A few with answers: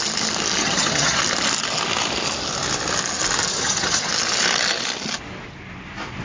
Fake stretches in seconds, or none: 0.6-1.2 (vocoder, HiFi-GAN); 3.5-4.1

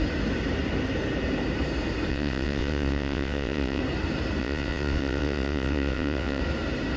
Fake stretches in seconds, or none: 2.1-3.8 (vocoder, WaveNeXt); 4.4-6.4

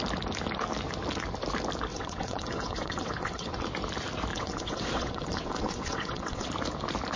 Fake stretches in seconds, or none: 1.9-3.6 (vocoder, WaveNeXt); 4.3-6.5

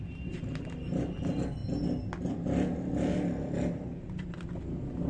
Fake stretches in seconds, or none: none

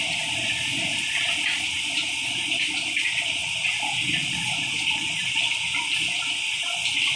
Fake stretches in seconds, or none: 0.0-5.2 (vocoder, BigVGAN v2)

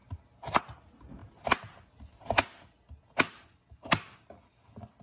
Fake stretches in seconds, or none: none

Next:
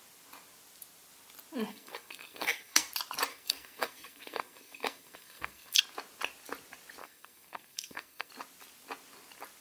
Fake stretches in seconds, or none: 1.7-2.9 (codec, SNAC); 3.3-5.8; 7.0-8.3

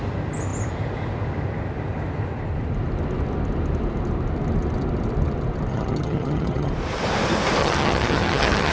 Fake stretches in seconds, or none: 5.7-6.7 (vocoder, HiFi-GAN); 7.6-8.7